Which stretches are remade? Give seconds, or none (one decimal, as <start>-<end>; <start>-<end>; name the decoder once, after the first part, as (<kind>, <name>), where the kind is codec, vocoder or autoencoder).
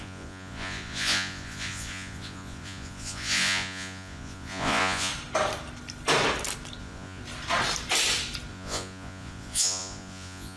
0.0-5.1 (vocoder, Vocos); 6.8-7.2; 8.5-10.6